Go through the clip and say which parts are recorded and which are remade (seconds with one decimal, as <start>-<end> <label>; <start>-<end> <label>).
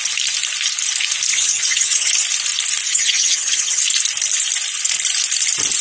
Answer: 0.0-1.3 recorded; 1.3-2.1 remade; 2.1-2.9 recorded; 2.9-3.8 remade; 3.8-5.8 recorded